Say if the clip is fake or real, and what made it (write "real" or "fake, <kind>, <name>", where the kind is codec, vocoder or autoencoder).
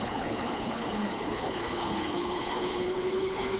fake, codec, HILCodec